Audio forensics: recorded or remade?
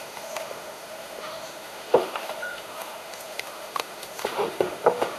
remade